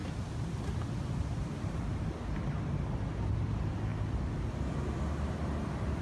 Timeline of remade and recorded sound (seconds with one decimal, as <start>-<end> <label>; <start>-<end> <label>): 0.0-1.8 remade; 1.8-3.9 recorded; 3.9-4.4 remade; 4.4-6.0 recorded